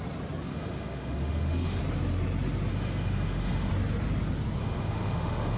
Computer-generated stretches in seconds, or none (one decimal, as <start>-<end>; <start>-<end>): 0.5-1.8; 2.7-3.7; 4.6-5.6